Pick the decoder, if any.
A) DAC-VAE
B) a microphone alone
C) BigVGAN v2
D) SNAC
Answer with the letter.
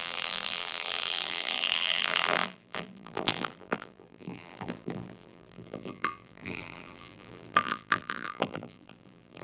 C